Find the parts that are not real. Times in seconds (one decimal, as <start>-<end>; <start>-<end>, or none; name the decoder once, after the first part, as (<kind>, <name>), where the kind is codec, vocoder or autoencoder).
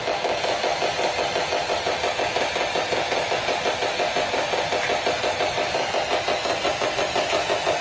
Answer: none